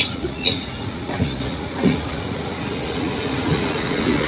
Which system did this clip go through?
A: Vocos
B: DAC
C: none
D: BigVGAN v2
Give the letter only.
A